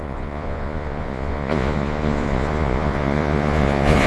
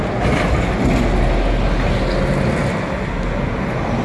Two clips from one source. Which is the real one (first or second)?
second